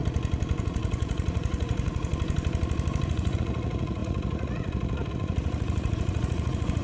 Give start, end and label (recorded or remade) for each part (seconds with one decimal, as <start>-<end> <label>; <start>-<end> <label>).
0.0-0.6 recorded; 0.6-2.1 remade; 2.1-3.1 recorded; 3.1-6.8 remade